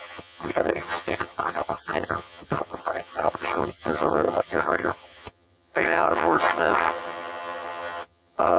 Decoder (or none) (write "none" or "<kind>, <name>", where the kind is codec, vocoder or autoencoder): vocoder, HiFi-GAN